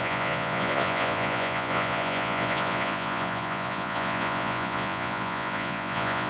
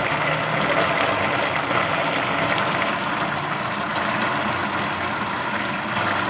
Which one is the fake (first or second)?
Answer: first